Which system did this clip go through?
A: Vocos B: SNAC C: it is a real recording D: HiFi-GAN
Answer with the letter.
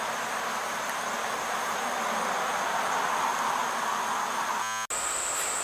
C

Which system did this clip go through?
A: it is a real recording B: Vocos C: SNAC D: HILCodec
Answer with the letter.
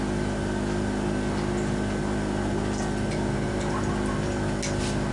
A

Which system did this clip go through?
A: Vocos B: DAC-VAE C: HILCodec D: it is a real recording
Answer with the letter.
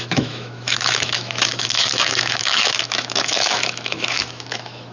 B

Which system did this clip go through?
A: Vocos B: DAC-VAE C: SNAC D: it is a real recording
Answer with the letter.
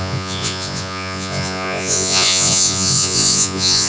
A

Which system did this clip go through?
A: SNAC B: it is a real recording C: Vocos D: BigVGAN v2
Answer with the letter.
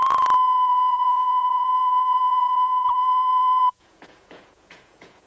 C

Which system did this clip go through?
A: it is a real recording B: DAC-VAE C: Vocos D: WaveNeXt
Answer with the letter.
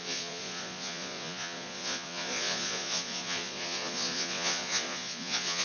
C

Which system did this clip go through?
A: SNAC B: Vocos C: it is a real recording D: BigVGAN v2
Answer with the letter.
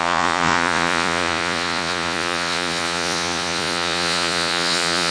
B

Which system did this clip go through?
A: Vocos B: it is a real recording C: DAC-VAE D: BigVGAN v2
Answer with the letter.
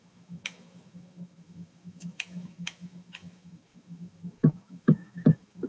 C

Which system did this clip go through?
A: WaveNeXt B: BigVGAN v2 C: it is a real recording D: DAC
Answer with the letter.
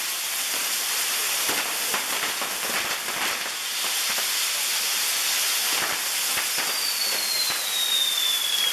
B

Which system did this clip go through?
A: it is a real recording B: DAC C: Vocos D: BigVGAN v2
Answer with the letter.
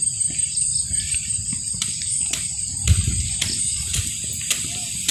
A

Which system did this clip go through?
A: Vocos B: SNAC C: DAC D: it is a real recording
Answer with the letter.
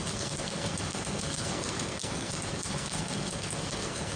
B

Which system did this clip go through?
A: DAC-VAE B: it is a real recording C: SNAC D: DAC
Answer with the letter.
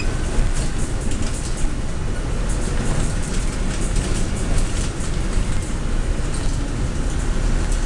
B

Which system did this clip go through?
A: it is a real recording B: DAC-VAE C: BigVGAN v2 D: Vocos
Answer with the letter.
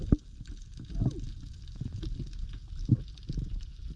A